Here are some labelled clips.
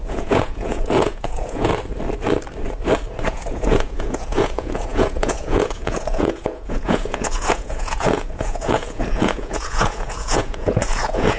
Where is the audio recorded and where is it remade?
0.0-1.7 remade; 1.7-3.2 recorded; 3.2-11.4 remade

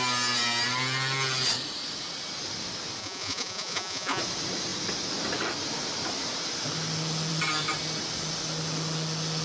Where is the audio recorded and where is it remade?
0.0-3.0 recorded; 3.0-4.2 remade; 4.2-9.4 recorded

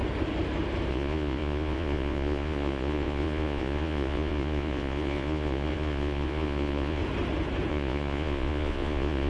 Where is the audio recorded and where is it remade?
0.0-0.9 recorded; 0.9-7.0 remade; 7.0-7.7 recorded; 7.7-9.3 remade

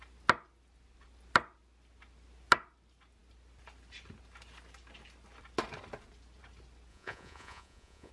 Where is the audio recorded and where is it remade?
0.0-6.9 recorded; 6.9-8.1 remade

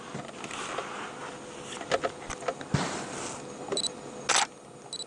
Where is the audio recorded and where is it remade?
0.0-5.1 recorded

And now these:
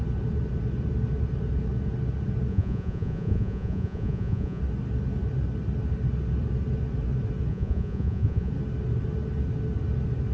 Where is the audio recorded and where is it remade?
0.0-2.5 recorded; 2.5-4.6 remade; 4.6-7.5 recorded; 7.5-8.5 remade; 8.5-10.3 recorded

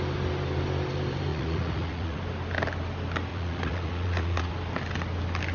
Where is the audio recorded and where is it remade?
0.0-1.3 recorded; 1.3-2.2 remade; 2.2-3.3 recorded; 3.3-4.5 remade; 4.5-5.5 recorded

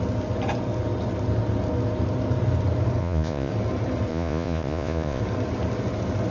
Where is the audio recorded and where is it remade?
0.0-3.0 recorded; 3.0-3.5 remade; 3.5-4.1 recorded; 4.1-5.2 remade; 5.2-6.3 recorded